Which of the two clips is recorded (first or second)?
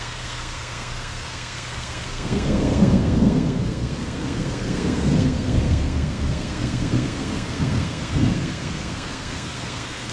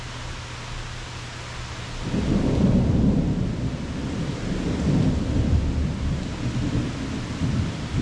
second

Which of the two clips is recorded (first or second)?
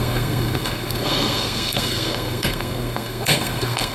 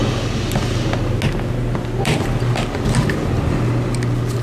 second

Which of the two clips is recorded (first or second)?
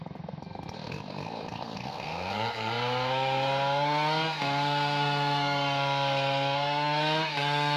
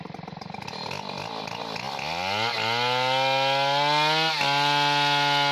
second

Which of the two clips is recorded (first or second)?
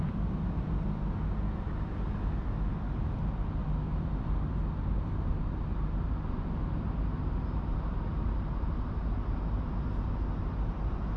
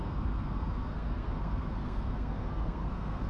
first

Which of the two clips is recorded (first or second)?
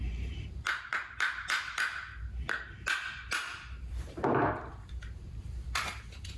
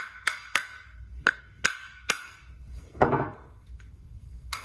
first